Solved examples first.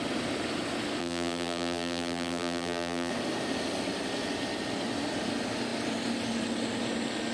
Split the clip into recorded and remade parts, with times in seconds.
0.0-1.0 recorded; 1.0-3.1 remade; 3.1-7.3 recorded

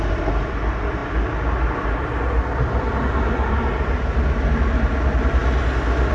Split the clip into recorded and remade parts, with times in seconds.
0.0-6.1 recorded